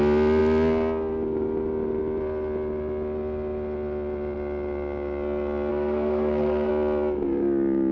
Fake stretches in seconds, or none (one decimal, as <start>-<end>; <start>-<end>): 5.7-6.7

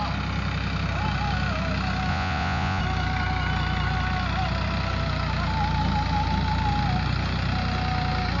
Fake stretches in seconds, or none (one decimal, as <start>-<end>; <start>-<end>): 2.1-2.8

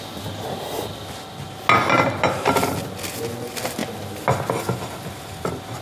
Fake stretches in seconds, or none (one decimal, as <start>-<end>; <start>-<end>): none

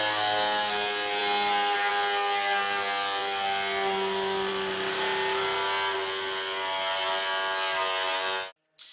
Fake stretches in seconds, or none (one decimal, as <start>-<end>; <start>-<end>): none

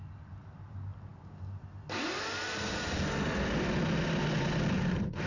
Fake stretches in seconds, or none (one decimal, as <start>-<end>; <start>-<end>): none

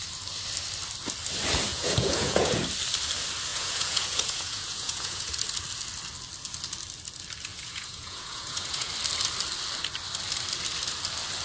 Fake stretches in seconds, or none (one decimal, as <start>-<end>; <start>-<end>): 1.7-2.6; 3.5-5.3; 7.5-8.9